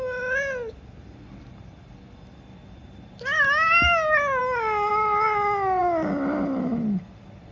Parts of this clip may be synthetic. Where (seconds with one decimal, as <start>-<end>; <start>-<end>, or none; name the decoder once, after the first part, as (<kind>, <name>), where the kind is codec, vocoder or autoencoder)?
none